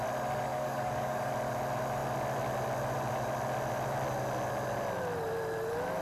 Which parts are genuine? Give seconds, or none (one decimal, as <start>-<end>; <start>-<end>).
0.0-0.5; 1.3-6.0